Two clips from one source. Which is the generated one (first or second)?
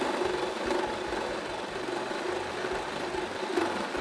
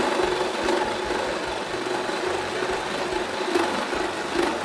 first